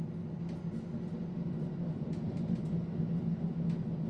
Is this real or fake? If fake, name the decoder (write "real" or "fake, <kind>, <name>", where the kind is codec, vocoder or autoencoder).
real